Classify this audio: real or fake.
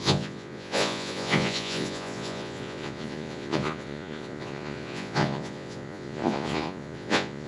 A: fake